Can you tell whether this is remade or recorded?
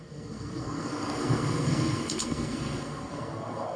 remade